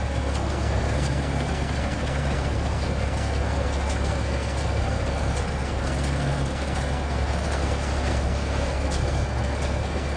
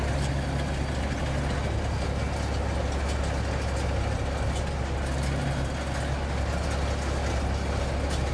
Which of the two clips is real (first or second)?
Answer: second